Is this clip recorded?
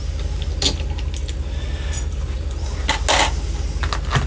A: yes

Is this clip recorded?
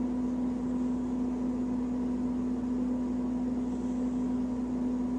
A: yes